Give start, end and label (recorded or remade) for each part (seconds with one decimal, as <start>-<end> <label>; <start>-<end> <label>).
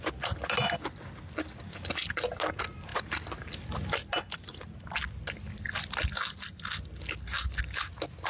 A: 0.0-8.3 recorded